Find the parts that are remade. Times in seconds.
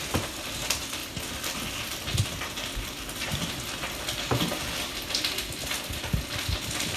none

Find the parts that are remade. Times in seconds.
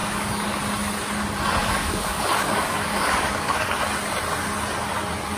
0.0-0.6 (codec, DAC); 1.6-3.8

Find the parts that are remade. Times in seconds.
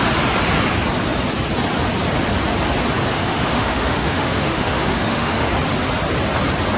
3.1-5.5 (autoencoder, DAC-VAE)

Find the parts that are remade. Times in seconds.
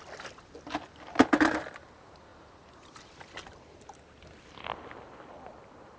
none